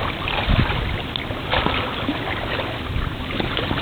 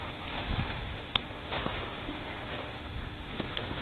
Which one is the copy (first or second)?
second